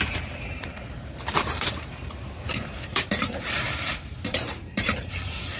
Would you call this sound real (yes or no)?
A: no